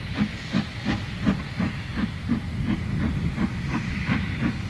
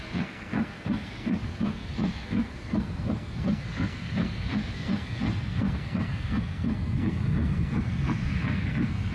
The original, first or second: first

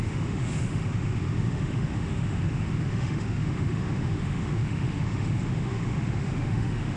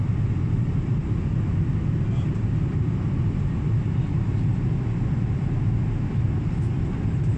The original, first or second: second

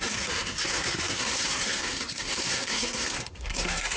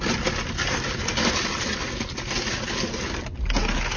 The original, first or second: second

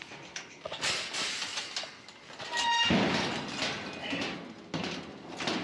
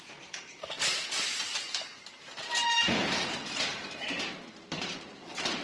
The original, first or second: first